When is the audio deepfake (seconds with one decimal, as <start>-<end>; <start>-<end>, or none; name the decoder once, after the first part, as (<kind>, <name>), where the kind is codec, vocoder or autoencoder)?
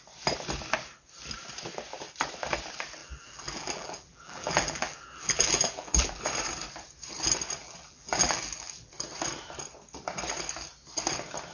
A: 3.0-6.2 (vocoder, BigVGAN v2); 7.6-8.9